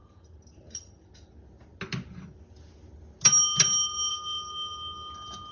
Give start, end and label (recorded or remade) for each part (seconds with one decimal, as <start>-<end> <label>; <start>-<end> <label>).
0.0-4.1 recorded; 4.1-5.1 remade; 5.1-5.5 recorded